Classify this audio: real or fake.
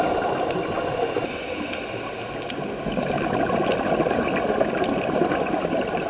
real